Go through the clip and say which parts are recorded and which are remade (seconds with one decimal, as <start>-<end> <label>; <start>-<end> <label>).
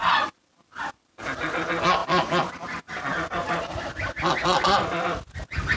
0.0-5.8 recorded